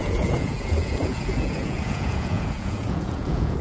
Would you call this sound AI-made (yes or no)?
yes